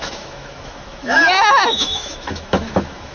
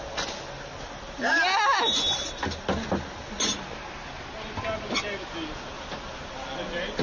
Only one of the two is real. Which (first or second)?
second